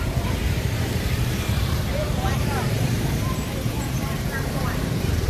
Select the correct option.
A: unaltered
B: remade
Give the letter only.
B